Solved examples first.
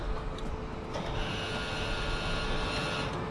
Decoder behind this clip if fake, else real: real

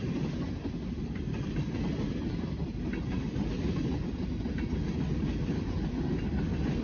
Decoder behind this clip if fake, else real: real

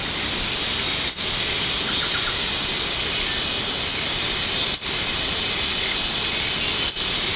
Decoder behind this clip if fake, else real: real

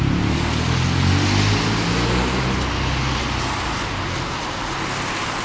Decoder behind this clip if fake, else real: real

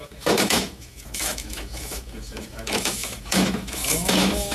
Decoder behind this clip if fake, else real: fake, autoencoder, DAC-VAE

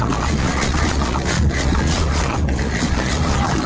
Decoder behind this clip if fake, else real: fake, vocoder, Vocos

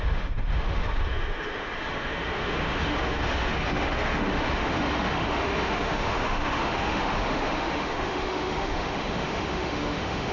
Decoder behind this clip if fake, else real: fake, autoencoder, DAC-VAE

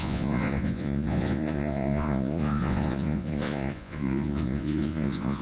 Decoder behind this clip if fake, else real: fake, vocoder, Vocos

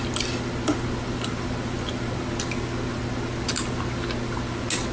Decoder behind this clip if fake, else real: real